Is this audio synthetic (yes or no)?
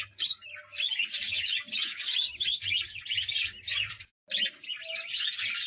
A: no